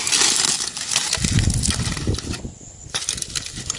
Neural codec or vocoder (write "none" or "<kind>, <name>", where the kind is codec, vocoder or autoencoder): none